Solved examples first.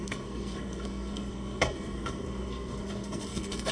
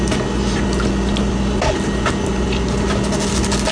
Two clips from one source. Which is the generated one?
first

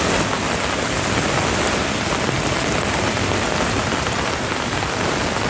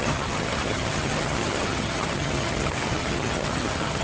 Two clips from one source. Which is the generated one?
second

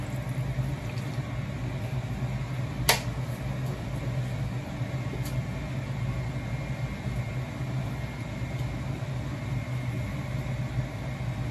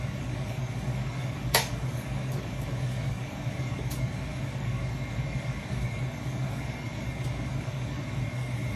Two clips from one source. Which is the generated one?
second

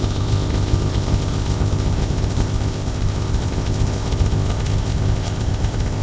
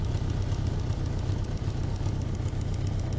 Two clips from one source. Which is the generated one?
first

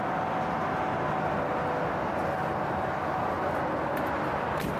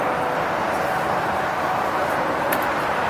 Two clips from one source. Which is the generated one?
second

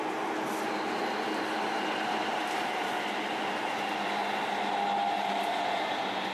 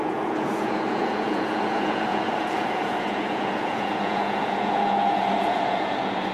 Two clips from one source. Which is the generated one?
second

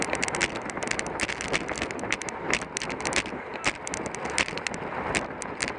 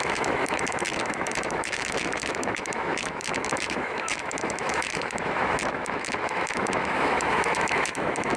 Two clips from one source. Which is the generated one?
second